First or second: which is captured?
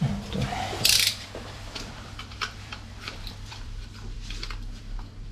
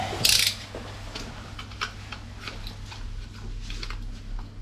second